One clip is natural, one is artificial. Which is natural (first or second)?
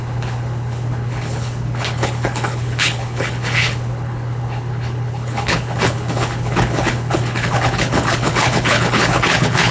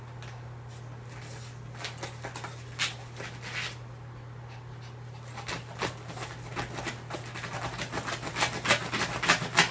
second